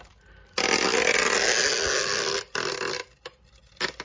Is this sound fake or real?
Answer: real